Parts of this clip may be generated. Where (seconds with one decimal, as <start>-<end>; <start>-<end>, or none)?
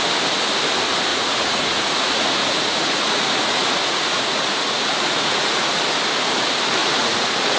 1.1-5.7; 6.8-7.6